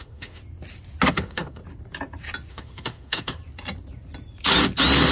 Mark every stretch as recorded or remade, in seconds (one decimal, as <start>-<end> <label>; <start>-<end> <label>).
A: 0.0-0.4 remade; 0.4-1.1 recorded; 1.1-1.6 remade; 1.6-2.5 recorded; 2.5-3.4 remade; 3.4-5.1 recorded